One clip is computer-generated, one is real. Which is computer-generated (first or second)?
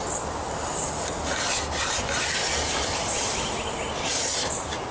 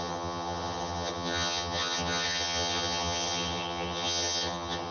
second